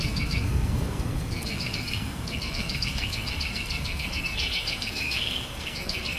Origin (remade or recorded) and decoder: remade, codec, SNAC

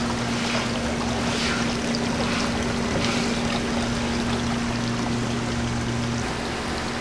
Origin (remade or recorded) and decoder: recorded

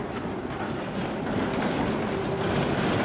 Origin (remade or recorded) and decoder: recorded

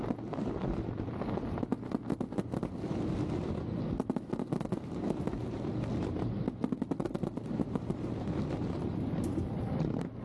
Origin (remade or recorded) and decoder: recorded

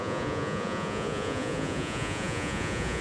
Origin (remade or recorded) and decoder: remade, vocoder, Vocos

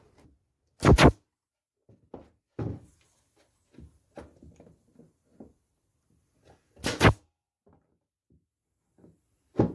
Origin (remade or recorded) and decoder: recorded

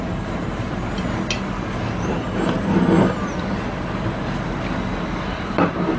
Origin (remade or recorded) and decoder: recorded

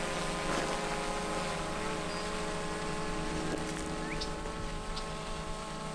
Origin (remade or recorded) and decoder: recorded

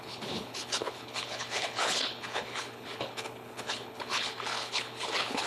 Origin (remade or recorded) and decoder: remade, codec, HILCodec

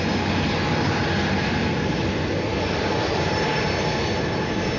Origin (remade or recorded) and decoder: recorded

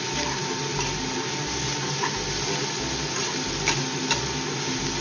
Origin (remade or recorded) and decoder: recorded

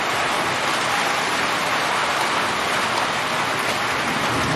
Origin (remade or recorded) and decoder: remade, vocoder, BigVGAN v2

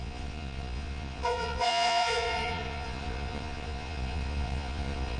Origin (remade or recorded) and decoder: remade, vocoder, Vocos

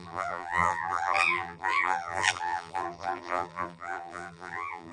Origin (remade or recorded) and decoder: remade, vocoder, BigVGAN v2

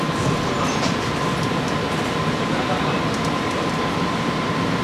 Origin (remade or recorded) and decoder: recorded